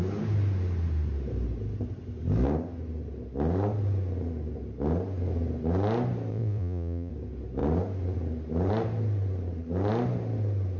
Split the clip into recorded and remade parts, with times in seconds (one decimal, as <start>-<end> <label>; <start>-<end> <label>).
0.0-6.3 recorded; 6.3-7.1 remade; 7.1-10.8 recorded